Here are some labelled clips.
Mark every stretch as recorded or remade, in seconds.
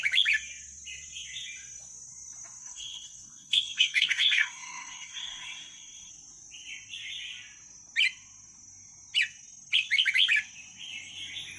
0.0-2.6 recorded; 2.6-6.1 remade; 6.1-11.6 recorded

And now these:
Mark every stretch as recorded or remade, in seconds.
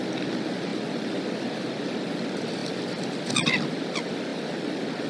0.0-5.1 recorded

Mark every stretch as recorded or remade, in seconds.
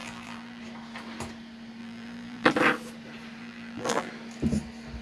0.0-0.6 remade; 0.6-1.8 recorded; 1.8-2.5 remade; 2.5-3.4 recorded; 3.4-4.1 remade; 4.1-5.0 recorded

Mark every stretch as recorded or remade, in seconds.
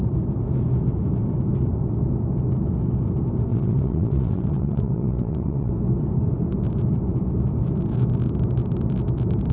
0.0-3.5 recorded; 3.5-5.7 remade; 5.7-9.5 recorded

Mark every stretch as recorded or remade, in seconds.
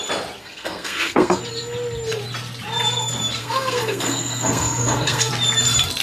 0.0-0.4 recorded; 0.4-1.4 remade; 1.4-3.4 recorded; 3.4-5.3 remade; 5.3-6.0 recorded